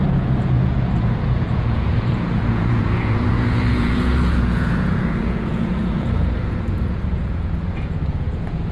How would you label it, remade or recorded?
remade